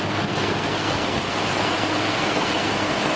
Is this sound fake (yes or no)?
yes